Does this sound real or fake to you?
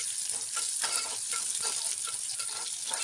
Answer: real